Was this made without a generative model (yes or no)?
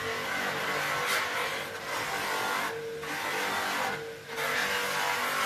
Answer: yes